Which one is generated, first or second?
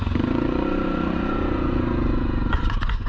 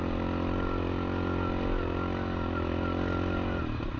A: first